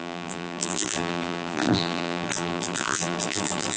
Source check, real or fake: fake